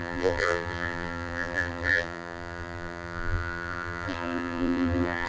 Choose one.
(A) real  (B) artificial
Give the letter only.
B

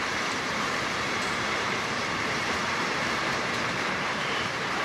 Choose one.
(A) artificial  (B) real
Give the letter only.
A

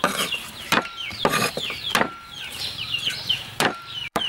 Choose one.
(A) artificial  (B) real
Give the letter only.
A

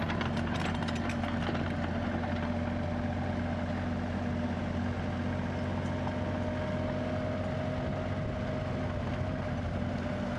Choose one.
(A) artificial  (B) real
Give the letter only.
B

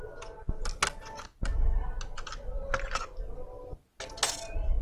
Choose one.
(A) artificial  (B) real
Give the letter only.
B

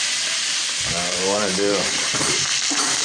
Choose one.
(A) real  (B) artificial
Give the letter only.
B